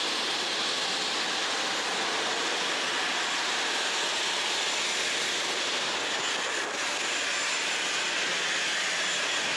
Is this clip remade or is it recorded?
recorded